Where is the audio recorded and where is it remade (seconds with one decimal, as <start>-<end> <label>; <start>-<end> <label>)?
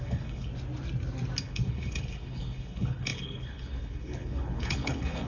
0.0-0.5 remade; 0.5-1.4 recorded; 1.4-5.3 remade